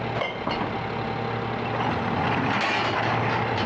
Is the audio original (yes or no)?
yes